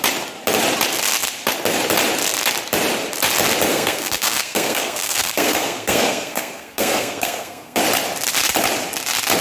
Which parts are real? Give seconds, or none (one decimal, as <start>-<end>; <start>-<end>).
0.0-3.7; 7.8-9.4